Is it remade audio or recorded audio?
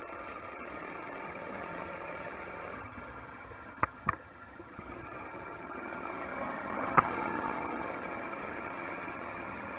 remade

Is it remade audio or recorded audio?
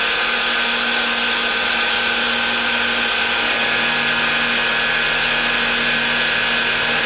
recorded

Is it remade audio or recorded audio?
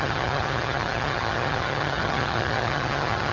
remade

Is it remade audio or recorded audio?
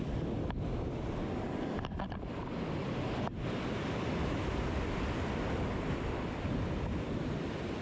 recorded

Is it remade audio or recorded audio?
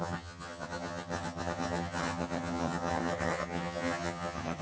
remade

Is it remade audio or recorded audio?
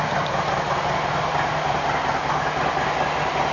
recorded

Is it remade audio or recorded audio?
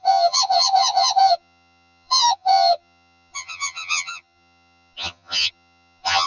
remade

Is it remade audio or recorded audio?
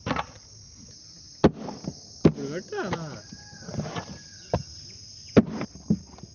recorded